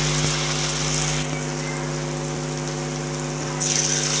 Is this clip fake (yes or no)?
no